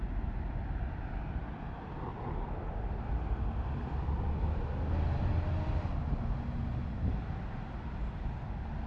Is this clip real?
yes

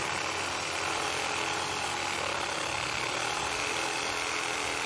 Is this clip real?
yes